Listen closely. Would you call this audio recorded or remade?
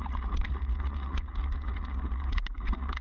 remade